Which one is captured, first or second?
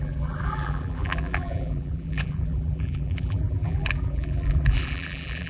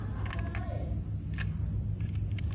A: second